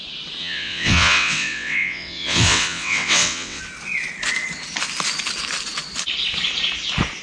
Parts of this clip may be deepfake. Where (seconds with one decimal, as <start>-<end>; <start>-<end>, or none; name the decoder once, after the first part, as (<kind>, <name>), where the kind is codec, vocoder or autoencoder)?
0.4-3.6 (vocoder, WaveNeXt)